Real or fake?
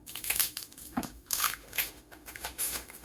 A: fake